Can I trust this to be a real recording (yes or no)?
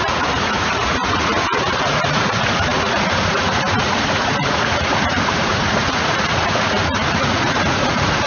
no